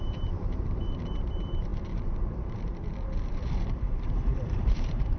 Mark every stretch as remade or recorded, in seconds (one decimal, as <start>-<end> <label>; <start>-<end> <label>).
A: 0.0-2.7 remade; 2.7-3.3 recorded; 3.3-5.2 remade